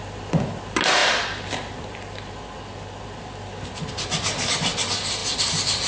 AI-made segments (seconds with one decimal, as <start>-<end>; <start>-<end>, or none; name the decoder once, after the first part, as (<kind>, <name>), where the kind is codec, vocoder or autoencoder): none